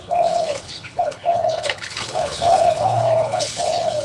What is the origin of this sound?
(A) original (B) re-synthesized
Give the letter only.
B